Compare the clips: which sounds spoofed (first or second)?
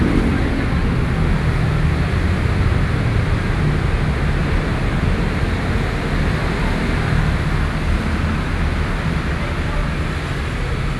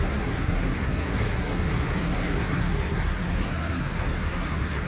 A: second